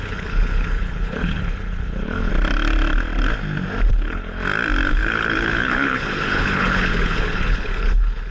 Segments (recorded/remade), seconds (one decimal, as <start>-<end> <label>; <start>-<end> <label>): 0.0-2.3 remade; 2.3-3.9 recorded; 3.9-4.4 remade; 4.4-4.9 recorded; 4.9-8.3 remade